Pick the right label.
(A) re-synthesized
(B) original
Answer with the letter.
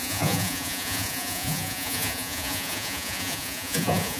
A